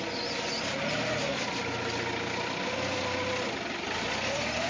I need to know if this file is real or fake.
real